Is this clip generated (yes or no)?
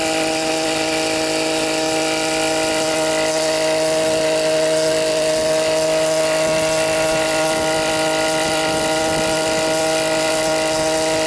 no